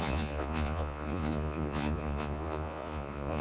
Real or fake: fake